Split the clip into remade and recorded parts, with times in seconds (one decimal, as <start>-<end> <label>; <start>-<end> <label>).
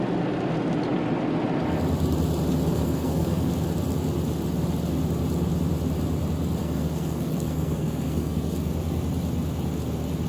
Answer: 0.0-2.7 recorded; 2.7-3.5 remade; 3.5-6.6 recorded; 6.6-8.7 remade; 8.7-10.3 recorded